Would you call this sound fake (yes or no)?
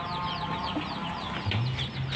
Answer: no